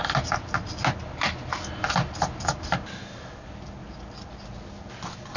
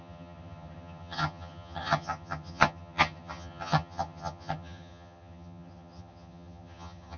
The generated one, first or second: second